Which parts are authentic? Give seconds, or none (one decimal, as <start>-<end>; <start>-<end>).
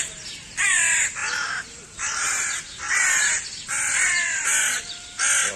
0.0-1.2; 4.6-5.6